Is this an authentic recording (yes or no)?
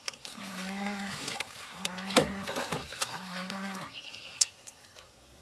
no